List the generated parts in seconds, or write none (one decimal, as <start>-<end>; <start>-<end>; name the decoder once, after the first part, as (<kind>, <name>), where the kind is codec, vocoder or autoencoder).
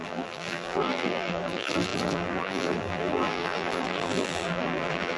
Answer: 0.0-5.2 (vocoder, BigVGAN v2)